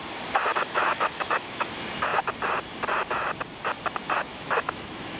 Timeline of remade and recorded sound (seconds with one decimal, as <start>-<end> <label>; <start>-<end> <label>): 0.0-0.5 recorded; 0.5-1.7 remade; 1.7-4.3 recorded; 4.3-5.2 remade